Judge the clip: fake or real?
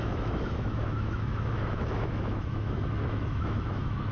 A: fake